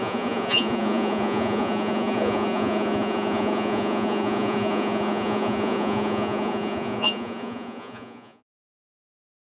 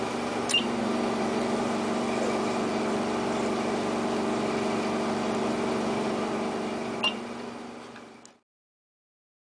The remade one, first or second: first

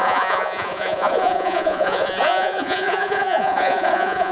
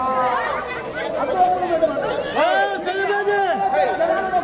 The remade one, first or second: first